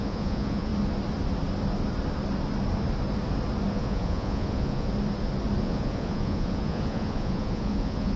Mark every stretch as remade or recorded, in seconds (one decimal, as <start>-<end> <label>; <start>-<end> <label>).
0.0-0.7 remade; 0.7-3.7 recorded; 3.7-4.9 remade; 4.9-5.6 recorded; 5.6-8.2 remade